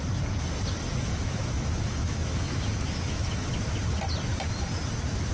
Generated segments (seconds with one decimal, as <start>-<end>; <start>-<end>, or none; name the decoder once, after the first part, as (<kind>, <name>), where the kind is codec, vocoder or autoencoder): 0.9-3.6 (autoencoder, DAC-VAE)